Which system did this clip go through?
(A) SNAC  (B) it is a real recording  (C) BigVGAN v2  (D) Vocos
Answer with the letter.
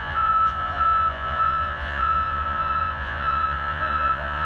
D